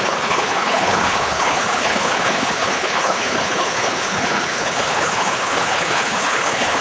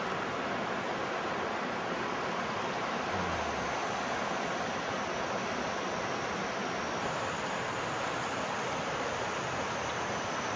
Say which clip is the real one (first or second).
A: second